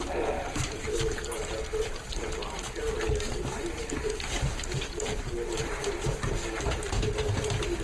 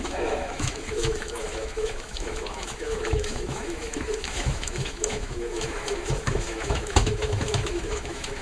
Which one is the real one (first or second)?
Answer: first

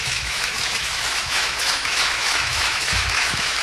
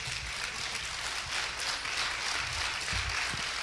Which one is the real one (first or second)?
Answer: second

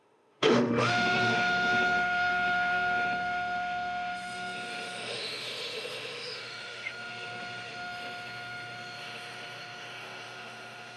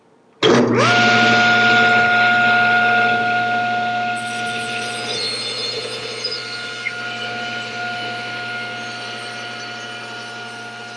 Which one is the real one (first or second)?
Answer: second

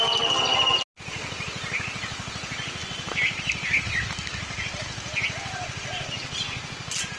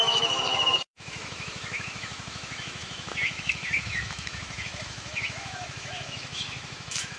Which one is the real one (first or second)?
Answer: first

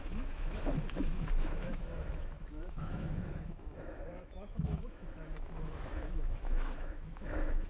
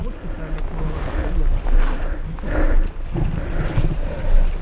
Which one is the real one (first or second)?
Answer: second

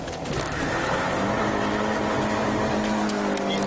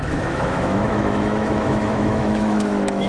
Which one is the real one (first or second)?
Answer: first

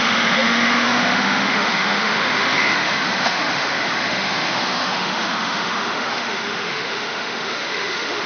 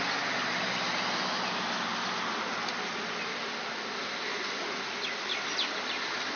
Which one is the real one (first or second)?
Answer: second